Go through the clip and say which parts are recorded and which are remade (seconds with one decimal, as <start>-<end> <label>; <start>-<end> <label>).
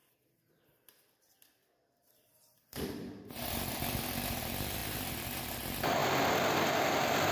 0.0-6.0 remade; 6.0-6.8 recorded; 6.8-7.3 remade